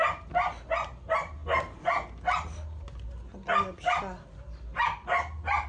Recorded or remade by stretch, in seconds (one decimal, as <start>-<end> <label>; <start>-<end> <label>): 0.0-5.7 recorded